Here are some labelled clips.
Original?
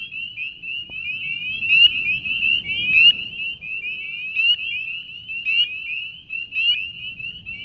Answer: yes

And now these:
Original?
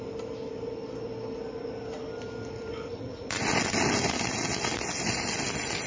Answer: yes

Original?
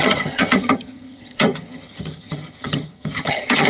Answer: no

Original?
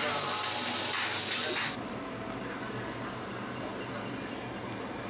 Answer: yes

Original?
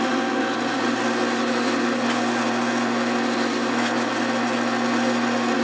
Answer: yes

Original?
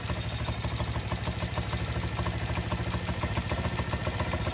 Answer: yes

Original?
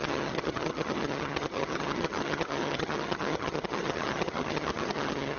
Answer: no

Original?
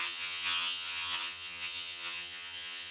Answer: no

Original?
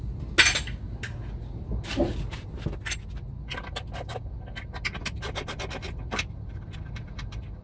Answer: yes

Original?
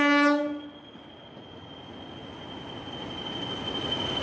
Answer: yes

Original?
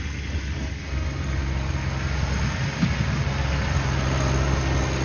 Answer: yes